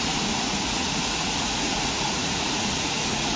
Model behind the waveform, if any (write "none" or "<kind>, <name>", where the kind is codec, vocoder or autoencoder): vocoder, Vocos